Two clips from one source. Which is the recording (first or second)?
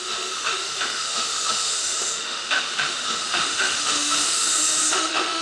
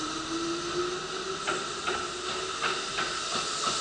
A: second